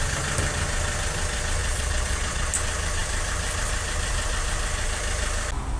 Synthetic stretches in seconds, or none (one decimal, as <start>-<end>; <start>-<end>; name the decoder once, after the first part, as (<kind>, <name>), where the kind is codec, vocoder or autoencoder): 1.6-2.5 (vocoder, Vocos)